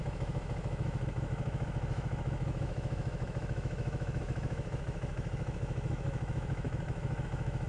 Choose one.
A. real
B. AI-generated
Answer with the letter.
B